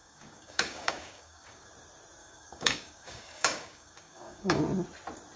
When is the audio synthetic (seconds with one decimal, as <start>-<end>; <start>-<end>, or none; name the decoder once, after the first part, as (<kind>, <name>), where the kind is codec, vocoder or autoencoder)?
0.0-1.7 (codec, DAC); 2.2-4.6